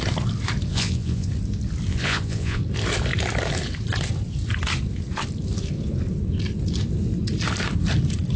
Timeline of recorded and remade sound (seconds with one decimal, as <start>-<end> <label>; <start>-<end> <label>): 0.0-0.7 recorded; 0.7-1.3 remade; 1.3-1.9 recorded; 1.9-2.6 remade; 2.6-8.4 recorded